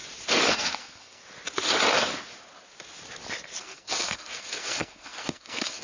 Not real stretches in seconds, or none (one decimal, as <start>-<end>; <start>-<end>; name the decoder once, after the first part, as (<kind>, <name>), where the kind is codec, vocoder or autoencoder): 0.5-1.2 (codec, SNAC); 3.6-5.8